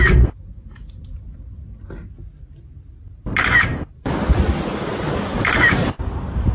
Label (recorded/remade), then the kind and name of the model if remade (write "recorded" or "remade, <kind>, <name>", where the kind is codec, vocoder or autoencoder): recorded